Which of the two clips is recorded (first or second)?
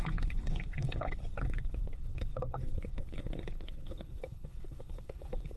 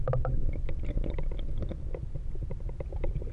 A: second